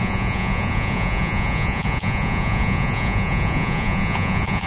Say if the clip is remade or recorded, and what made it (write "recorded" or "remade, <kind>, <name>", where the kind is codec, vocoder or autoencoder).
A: remade, vocoder, Vocos